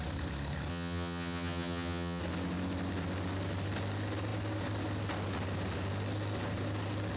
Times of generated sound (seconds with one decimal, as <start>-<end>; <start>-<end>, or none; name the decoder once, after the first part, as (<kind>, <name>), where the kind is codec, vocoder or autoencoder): 0.7-2.2 (vocoder, HiFi-GAN)